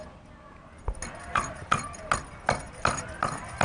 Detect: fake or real real